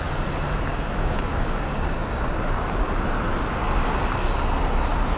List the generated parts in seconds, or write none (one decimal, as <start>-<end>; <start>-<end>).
0.7-2.1